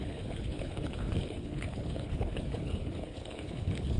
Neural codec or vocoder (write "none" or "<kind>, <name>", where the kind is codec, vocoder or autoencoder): codec, HILCodec